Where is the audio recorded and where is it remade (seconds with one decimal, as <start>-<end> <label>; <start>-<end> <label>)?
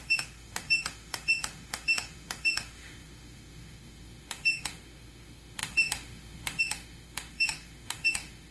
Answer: 0.0-8.5 remade